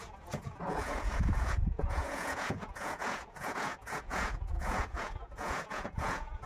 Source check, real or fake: fake